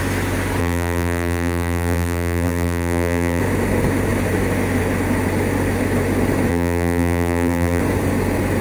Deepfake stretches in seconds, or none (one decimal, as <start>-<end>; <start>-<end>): 0.6-3.4; 6.5-7.8